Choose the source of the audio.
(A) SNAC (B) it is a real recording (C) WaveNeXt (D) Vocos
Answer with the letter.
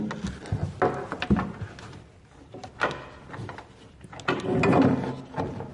B